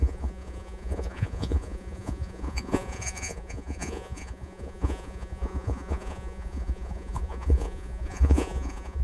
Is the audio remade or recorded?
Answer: remade